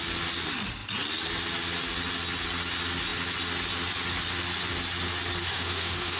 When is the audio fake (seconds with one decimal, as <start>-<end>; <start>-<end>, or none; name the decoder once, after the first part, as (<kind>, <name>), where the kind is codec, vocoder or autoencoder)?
5.4-6.2 (autoencoder, DAC-VAE)